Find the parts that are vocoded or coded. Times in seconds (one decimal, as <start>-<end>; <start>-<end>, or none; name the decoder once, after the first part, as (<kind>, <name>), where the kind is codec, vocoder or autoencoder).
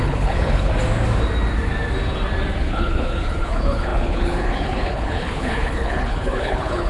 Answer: 0.0-0.7 (codec, HILCodec); 2.6-6.9